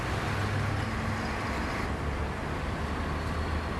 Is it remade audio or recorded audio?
recorded